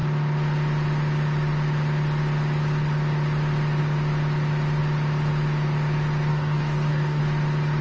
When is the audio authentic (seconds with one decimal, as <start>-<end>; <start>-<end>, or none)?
0.0-6.3; 7.2-7.8